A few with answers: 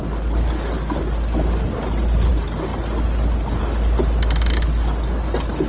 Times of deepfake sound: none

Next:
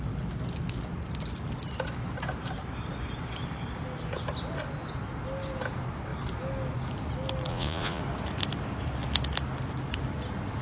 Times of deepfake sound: 7.5-8.0 (vocoder, Vocos)

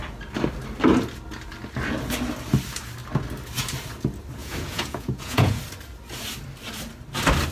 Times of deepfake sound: 4.4-5.6 (vocoder, Vocos)

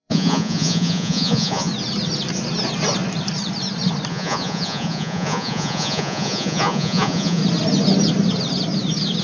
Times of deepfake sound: 0.0-1.7 (vocoder, Vocos); 4.1-7.4

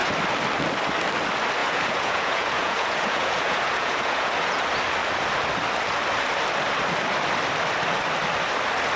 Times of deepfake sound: 1.6-4.6 (vocoder, Vocos)

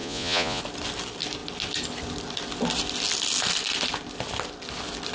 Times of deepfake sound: 0.0-0.6 (vocoder, Vocos)

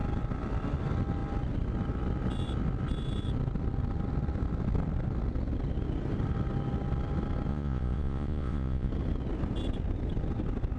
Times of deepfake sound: 7.5-8.9 (vocoder, Vocos)